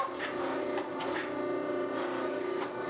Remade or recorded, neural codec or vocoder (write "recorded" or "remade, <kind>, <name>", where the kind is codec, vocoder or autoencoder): recorded